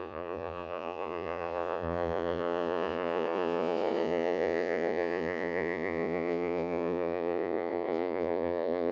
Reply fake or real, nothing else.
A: fake